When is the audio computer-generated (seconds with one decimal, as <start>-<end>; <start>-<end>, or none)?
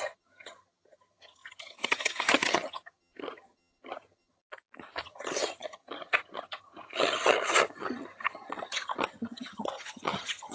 0.0-4.4; 5.0-10.5